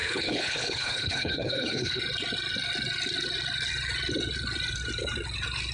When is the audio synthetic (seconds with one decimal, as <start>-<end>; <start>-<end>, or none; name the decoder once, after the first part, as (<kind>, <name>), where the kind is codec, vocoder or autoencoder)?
0.0-2.0 (codec, HILCodec)

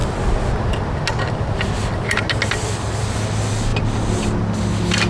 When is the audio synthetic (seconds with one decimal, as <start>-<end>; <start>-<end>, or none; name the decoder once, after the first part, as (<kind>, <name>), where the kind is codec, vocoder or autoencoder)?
none

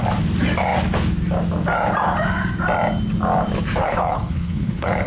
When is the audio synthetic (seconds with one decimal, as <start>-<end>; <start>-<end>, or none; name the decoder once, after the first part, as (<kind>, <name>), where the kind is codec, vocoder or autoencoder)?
3.8-5.1 (codec, HILCodec)

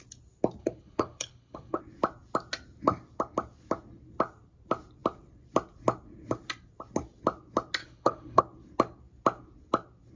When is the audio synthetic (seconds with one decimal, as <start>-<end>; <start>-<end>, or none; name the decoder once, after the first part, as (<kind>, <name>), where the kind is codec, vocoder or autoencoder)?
0.6-1.8 (codec, HILCodec); 7.8-8.4

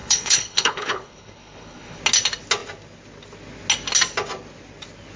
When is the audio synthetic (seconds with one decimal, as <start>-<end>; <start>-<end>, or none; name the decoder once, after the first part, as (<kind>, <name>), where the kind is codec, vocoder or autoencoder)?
0.0-2.0 (codec, HILCodec)

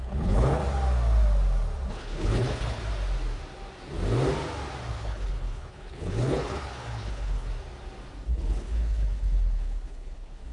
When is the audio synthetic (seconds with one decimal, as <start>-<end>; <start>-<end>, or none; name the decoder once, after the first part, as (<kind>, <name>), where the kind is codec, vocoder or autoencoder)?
0.0-0.6 (codec, HILCodec); 1.9-2.8; 4.9-7.5; 8.3-10.5

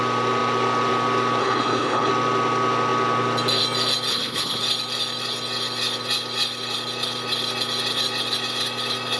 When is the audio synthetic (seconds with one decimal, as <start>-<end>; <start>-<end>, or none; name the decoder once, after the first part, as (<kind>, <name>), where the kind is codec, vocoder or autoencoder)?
1.4-2.1 (codec, HILCodec); 4.1-4.6

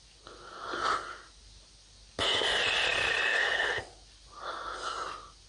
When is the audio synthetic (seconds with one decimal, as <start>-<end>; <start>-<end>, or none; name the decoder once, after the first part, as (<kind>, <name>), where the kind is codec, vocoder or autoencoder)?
3.3-3.8 (codec, HILCodec)